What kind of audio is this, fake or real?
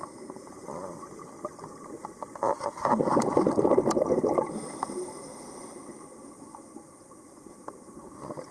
real